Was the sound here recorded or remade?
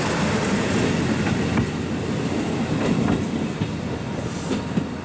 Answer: recorded